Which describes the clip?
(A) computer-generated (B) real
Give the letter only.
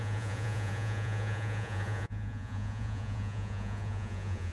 A